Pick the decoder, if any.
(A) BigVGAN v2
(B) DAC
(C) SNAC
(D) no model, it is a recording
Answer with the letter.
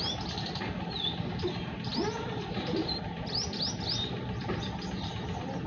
D